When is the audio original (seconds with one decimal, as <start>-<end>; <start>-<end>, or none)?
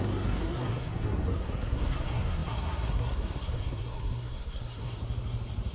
5.0-5.7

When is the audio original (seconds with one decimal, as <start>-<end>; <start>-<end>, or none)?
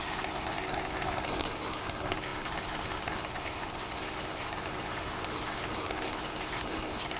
none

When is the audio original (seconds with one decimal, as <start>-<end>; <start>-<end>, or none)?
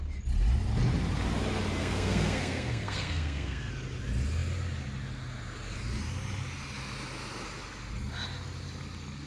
0.0-1.8; 3.7-9.3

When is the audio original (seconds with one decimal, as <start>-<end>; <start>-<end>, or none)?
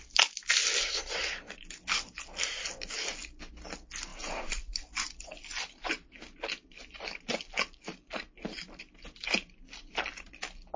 0.0-10.8